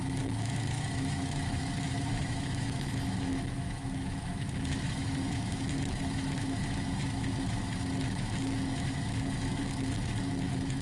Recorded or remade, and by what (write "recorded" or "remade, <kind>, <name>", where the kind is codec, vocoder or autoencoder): remade, autoencoder, DAC-VAE